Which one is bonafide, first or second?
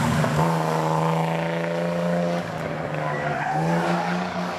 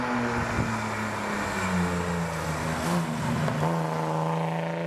second